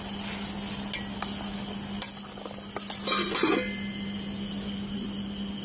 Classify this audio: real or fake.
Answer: real